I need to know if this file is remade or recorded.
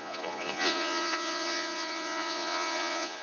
remade